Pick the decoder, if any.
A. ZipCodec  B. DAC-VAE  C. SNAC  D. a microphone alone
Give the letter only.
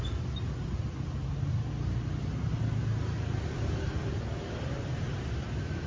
D